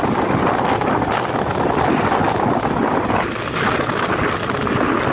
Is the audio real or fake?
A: real